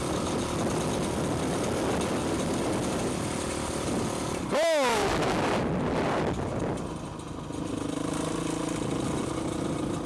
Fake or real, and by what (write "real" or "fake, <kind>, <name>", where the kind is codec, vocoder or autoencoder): real